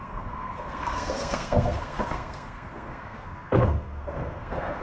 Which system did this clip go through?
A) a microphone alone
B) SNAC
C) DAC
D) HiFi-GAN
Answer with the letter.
B